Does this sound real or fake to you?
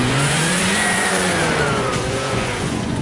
fake